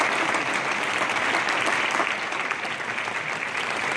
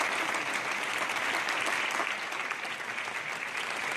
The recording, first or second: second